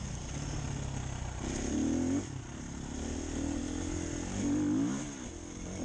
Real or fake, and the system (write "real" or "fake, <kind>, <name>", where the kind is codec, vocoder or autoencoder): real